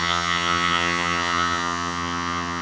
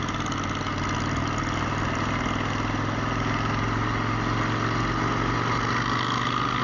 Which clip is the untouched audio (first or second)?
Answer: second